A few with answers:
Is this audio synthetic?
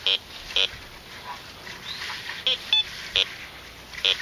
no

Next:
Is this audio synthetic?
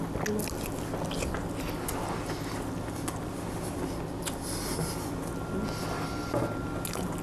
no